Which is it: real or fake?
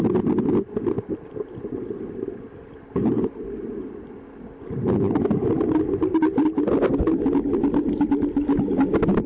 real